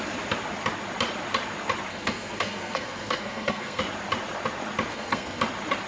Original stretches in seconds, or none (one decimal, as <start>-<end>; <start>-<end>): 0.0-1.9; 3.8-4.9; 5.4-5.9